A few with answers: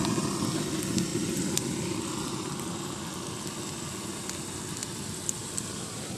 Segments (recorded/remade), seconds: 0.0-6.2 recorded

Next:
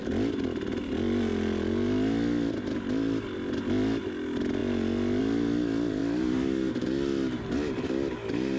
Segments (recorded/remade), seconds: 0.0-8.6 recorded

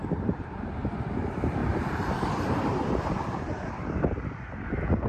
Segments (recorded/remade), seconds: 0.0-0.8 remade; 0.8-1.6 recorded; 1.6-3.7 remade; 3.7-5.1 recorded

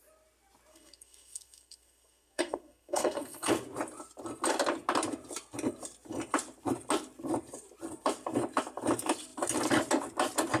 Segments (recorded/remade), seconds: 0.0-0.7 recorded; 0.7-3.5 remade; 3.5-10.6 recorded

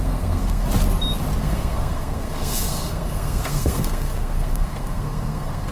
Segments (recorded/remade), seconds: 0.0-0.6 remade; 0.6-1.4 recorded; 1.4-5.7 remade

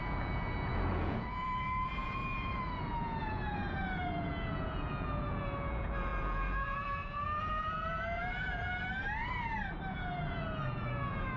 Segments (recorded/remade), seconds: 0.0-8.7 remade; 8.7-9.9 recorded; 9.9-11.4 remade

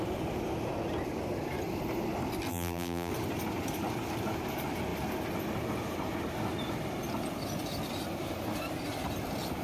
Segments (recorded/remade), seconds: 0.0-2.5 recorded; 2.5-3.1 remade; 3.1-9.6 recorded